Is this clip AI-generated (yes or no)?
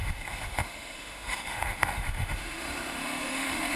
yes